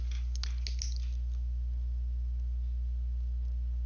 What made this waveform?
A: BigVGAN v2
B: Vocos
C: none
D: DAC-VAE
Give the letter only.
C